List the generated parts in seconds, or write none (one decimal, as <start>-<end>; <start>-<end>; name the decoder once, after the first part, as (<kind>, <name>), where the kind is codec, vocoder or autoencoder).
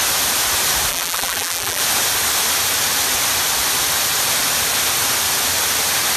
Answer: 0.9-1.8 (vocoder, BigVGAN v2)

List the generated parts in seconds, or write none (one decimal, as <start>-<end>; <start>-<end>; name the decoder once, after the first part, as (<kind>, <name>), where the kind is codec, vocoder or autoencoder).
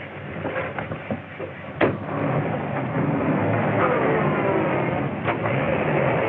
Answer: 2.9-3.6 (codec, SNAC)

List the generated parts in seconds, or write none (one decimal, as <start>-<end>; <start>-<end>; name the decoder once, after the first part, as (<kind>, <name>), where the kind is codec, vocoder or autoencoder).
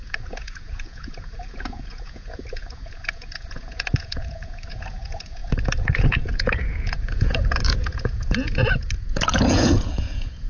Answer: 0.0-10.5 (vocoder, Vocos)